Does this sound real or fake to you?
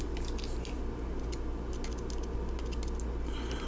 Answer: real